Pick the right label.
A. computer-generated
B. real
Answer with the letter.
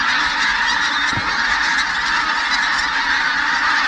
B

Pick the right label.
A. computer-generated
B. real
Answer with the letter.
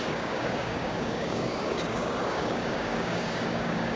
A